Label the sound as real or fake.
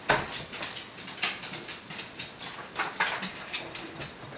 real